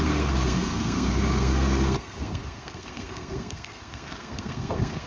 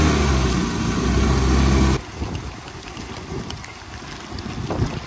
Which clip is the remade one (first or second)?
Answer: first